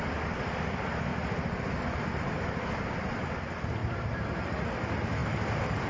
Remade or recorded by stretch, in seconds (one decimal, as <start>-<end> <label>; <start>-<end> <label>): 0.0-1.1 recorded; 1.1-3.4 remade; 3.4-3.8 recorded; 3.8-4.8 remade; 4.8-5.2 recorded; 5.2-5.9 remade